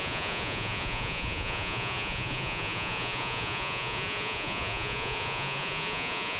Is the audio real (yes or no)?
no